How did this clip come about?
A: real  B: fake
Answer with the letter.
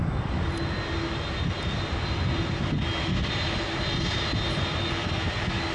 A